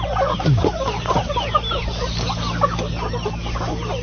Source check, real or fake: real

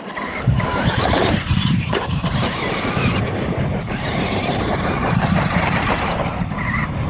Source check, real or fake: fake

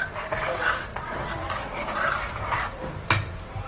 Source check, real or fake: fake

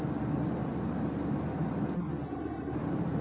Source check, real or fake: real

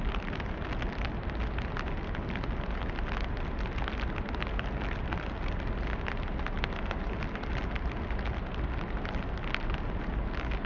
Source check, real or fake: real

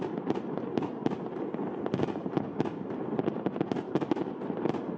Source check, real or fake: real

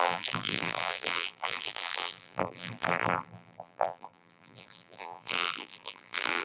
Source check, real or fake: fake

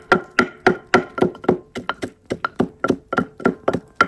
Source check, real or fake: real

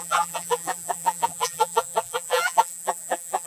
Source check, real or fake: fake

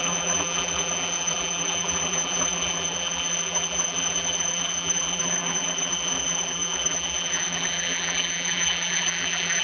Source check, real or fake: fake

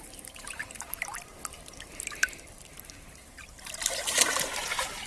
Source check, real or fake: fake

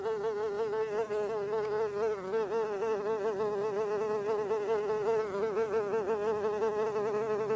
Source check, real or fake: real